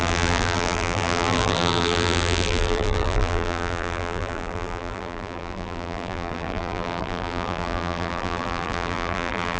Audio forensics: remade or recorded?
remade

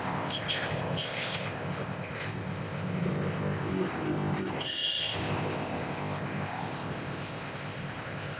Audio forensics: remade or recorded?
remade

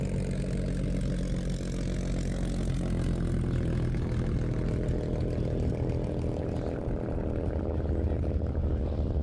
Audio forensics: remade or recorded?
recorded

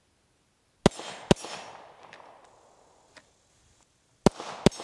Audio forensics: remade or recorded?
recorded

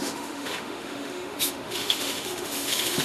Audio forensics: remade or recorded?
remade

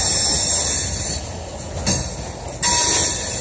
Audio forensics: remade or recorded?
recorded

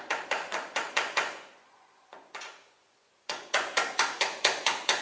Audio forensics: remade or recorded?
remade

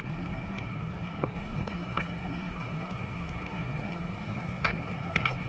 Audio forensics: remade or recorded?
remade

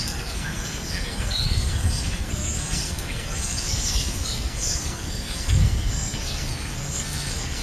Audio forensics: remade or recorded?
remade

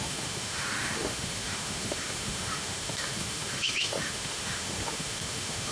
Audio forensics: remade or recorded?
remade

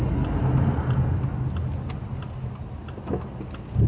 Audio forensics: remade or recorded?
recorded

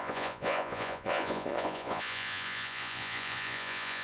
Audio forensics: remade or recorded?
remade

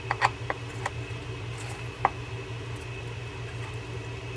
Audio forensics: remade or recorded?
recorded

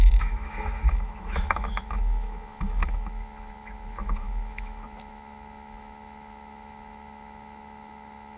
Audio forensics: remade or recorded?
remade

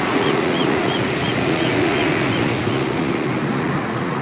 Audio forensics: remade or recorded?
remade